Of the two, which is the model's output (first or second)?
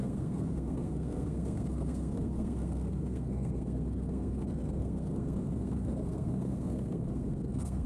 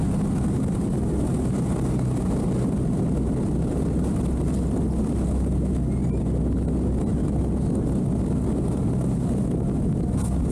first